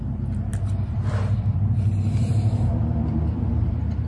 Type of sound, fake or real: fake